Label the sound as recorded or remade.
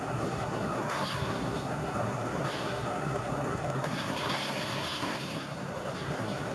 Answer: remade